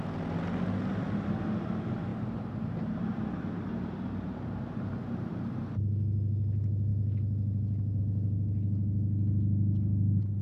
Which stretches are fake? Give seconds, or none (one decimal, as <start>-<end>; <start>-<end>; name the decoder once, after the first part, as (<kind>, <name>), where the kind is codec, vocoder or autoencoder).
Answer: 2.1-5.5 (vocoder, BigVGAN v2)